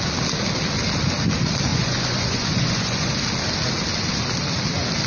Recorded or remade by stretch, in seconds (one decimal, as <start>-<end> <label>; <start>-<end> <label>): 0.0-1.7 recorded; 1.7-3.1 remade; 3.1-5.1 recorded